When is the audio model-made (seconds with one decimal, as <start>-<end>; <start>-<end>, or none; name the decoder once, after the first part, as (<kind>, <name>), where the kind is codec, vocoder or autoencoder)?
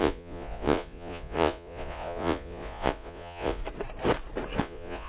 0.0-3.6 (vocoder, Vocos); 4.6-5.1